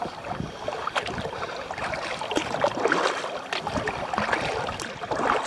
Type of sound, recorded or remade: recorded